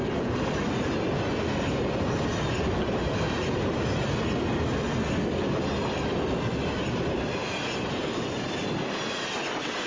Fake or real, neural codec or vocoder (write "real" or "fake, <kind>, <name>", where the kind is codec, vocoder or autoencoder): real